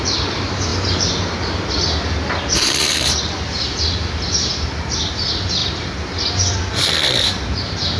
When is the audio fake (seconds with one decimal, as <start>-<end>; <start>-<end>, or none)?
none